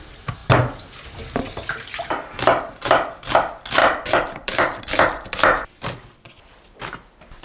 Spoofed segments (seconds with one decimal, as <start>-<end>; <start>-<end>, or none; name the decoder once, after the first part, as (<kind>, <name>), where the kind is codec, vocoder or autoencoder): 3.8-4.8 (vocoder, BigVGAN v2)